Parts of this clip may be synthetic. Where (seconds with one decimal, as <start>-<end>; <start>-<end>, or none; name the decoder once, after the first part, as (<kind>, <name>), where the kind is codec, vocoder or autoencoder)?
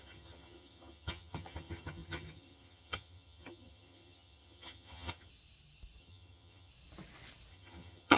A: 0.0-5.3 (vocoder, HiFi-GAN); 6.0-6.7; 7.5-8.2